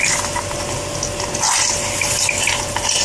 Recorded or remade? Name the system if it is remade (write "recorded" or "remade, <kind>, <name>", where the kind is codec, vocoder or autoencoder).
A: recorded